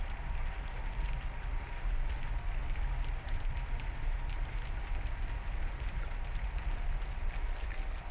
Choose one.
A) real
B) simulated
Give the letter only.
A